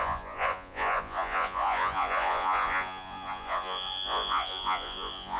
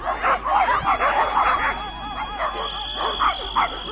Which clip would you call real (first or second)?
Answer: second